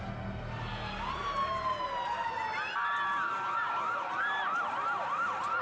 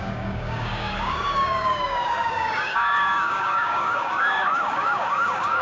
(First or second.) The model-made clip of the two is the second